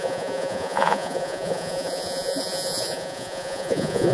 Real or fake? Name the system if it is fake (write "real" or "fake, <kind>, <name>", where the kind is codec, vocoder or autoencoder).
fake, vocoder, Vocos